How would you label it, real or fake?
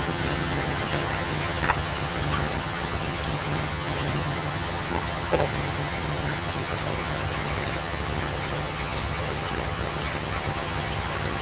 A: fake